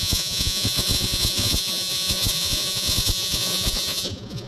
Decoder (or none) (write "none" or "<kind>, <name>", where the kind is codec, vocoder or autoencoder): vocoder, Vocos